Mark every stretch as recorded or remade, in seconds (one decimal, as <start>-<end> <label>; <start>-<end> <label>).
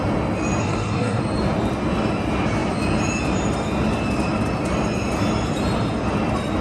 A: 0.0-0.6 recorded; 0.6-1.2 remade; 1.2-6.6 recorded